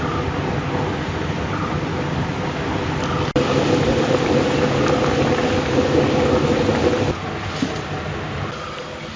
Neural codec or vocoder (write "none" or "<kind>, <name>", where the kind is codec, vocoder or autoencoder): none